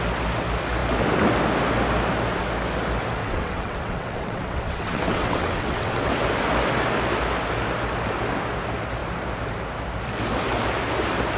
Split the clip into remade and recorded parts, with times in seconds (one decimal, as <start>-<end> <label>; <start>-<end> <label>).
0.0-3.2 recorded; 3.2-6.1 remade; 6.1-11.4 recorded